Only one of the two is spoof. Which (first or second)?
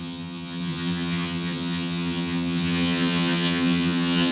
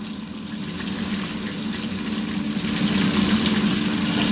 first